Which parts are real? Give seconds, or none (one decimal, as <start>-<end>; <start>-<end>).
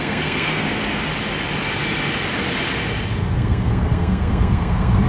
0.8-3.3